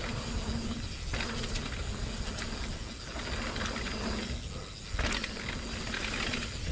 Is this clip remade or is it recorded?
recorded